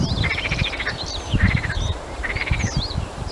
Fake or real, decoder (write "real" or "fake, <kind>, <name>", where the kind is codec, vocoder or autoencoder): fake, vocoder, BigVGAN v2